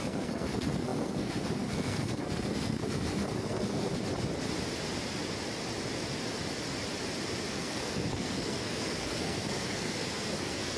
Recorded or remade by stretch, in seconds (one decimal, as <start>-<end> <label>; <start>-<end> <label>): 0.0-3.9 remade; 3.9-7.5 recorded; 7.5-10.8 remade